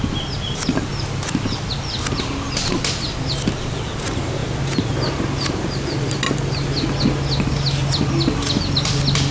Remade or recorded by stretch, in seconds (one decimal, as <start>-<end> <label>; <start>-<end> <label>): 0.0-9.3 recorded